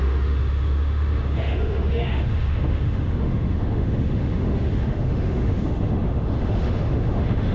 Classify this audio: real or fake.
fake